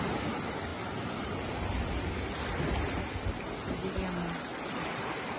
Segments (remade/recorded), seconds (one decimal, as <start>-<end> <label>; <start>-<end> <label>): 0.0-5.4 recorded